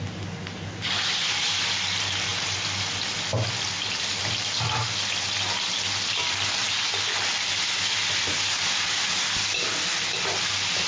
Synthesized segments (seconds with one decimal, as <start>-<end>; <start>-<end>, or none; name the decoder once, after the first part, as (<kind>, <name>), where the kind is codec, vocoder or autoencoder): none